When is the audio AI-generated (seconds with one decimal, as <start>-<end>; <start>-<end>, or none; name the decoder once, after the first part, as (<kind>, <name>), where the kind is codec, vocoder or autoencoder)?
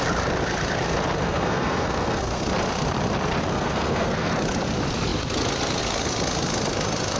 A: 1.2-2.4 (codec, SNAC); 3.5-4.3